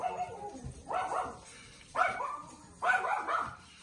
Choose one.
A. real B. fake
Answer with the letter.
B